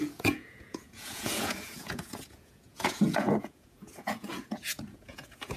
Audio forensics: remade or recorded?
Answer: remade